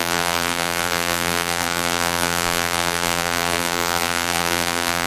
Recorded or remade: remade